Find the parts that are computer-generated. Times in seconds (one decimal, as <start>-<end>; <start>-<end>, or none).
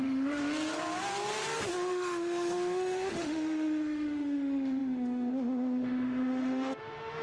0.0-0.4; 1.7-7.2